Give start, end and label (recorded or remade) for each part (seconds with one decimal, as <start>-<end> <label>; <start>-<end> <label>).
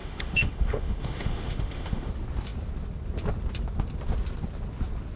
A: 0.0-2.1 remade; 2.1-5.2 recorded